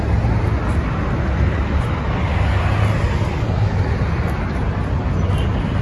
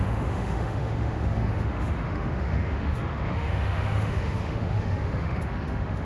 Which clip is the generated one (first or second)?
second